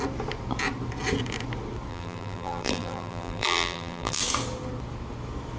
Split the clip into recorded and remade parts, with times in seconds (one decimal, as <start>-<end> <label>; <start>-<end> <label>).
0.0-1.9 recorded; 1.9-4.2 remade; 4.2-5.6 recorded